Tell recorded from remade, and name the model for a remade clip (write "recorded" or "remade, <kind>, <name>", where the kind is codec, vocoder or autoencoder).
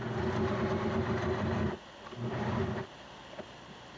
recorded